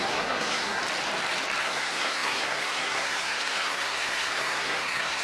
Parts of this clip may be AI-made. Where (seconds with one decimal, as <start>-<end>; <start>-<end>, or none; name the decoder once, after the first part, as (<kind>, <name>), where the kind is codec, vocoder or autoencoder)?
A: 0.0-0.8 (codec, SNAC); 1.6-5.2